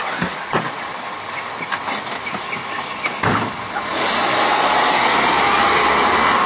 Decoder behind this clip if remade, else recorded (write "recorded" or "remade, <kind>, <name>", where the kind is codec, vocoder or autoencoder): recorded